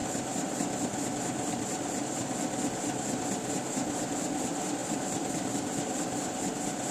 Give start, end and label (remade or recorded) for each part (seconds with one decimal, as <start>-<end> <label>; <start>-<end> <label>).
0.0-6.9 recorded